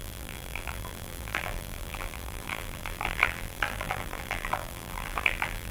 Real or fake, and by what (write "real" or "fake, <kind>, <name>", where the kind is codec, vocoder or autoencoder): fake, vocoder, BigVGAN v2